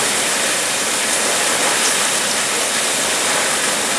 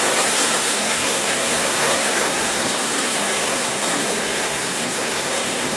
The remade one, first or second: second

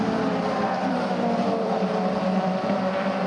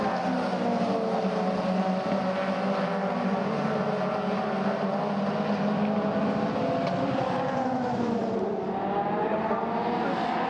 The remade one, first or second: first